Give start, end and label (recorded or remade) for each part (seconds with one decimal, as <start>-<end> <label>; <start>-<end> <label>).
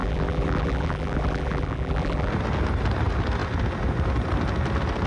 0.0-2.3 remade; 2.3-5.1 recorded